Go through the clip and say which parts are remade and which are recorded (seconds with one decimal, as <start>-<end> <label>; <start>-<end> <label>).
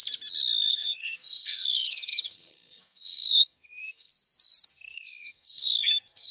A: 0.0-0.7 recorded; 0.7-4.1 remade; 4.1-4.7 recorded; 4.7-6.3 remade